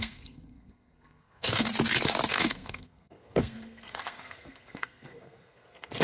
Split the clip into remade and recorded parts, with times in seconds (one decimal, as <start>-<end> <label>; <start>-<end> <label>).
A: 0.0-1.7 remade; 1.7-2.3 recorded; 2.3-6.0 remade